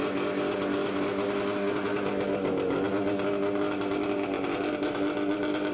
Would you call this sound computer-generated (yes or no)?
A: no